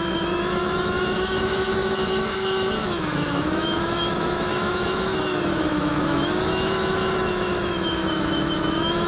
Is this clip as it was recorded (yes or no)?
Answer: no